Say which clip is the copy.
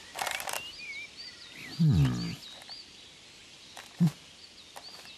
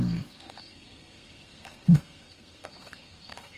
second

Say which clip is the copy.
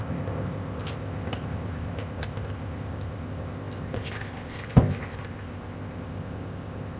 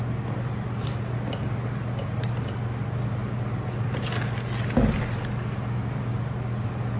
first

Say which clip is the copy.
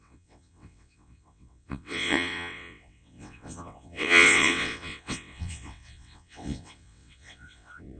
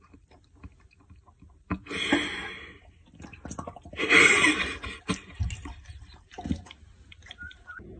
first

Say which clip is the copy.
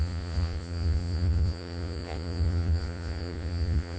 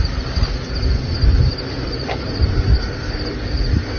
first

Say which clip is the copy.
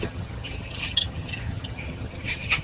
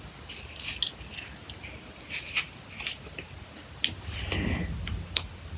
first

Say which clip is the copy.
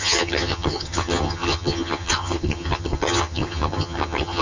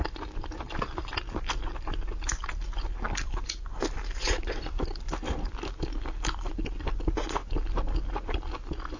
first